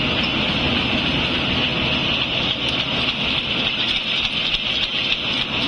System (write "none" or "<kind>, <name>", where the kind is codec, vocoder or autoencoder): none